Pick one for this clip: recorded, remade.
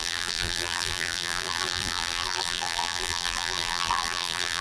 remade